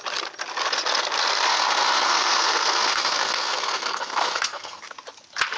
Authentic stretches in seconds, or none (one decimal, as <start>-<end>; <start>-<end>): 0.0-1.5; 4.8-5.6